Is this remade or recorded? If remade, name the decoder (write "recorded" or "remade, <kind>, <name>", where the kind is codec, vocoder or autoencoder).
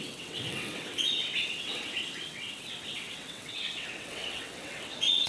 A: remade, vocoder, WaveNeXt